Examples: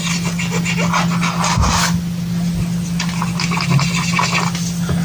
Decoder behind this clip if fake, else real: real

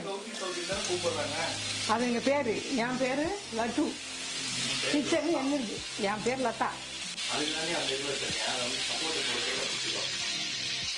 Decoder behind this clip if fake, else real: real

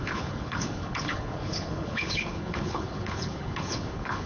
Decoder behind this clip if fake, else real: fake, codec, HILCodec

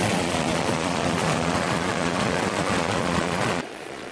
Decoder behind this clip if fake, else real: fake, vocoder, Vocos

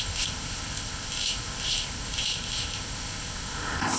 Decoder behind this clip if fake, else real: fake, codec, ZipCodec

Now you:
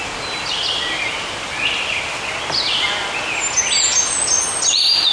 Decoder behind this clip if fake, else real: real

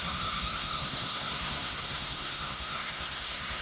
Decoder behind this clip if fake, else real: fake, codec, SNAC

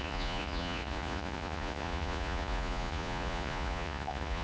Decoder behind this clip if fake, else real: fake, vocoder, Vocos